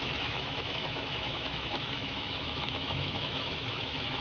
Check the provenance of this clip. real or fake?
fake